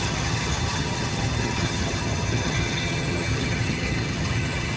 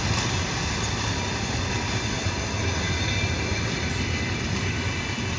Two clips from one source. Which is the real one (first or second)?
second